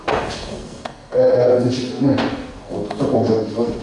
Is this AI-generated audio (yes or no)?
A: yes